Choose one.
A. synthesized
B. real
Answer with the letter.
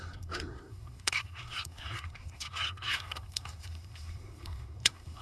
A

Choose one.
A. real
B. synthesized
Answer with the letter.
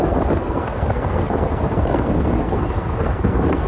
B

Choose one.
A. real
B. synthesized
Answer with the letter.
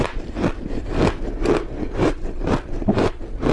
A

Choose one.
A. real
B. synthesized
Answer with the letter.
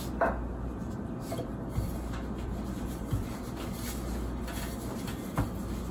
A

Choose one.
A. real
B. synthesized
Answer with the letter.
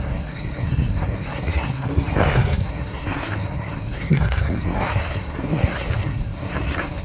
B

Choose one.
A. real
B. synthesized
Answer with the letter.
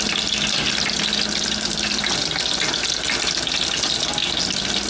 A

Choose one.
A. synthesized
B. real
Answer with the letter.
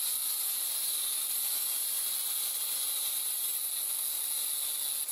B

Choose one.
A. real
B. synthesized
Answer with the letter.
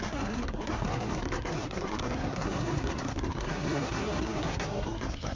B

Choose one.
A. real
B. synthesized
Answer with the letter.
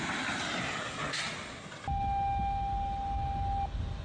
A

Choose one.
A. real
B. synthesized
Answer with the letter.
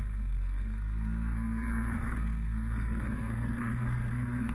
B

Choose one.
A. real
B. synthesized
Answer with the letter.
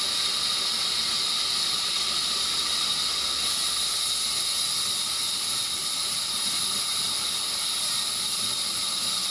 A